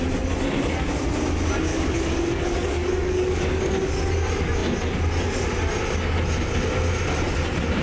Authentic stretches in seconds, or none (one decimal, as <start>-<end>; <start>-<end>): 0.0-1.7; 3.9-7.8

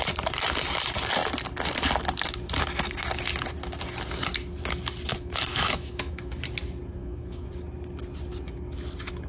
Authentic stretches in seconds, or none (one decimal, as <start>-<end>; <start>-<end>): 0.0-5.1; 6.4-7.0; 7.5-9.3